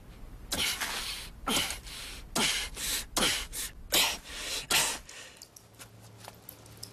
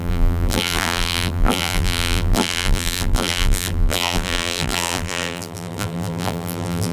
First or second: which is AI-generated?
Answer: second